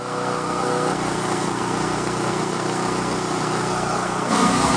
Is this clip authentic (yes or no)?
no